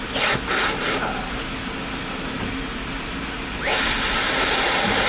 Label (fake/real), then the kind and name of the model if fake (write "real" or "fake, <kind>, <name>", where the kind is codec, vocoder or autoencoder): real